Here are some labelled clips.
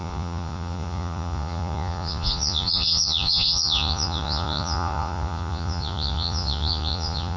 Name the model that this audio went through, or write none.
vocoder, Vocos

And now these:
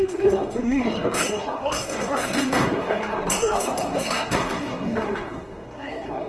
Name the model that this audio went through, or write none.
codec, SNAC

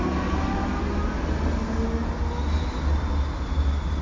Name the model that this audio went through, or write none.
none